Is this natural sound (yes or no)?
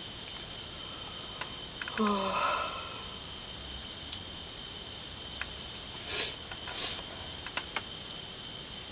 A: yes